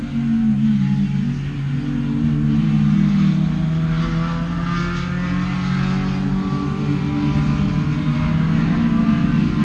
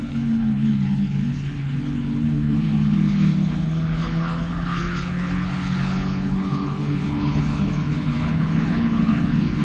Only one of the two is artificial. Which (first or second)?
second